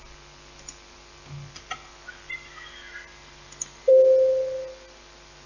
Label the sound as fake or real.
real